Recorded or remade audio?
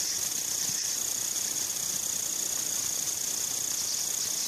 recorded